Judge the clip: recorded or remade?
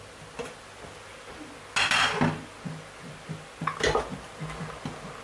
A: recorded